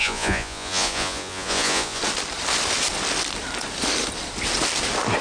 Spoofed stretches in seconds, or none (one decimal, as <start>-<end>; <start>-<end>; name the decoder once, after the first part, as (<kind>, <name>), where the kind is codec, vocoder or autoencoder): 0.0-2.0 (vocoder, Vocos)